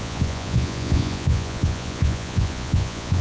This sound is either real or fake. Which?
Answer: fake